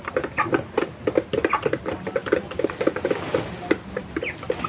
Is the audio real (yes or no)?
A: yes